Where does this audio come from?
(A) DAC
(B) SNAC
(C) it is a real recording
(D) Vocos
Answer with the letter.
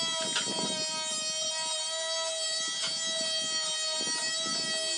C